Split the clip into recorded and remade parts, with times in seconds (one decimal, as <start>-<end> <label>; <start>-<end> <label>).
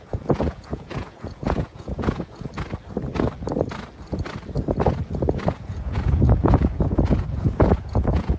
0.0-2.5 remade; 2.5-5.5 recorded; 5.5-8.4 remade